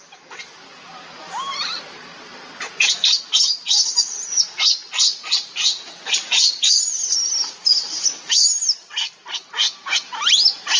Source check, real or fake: real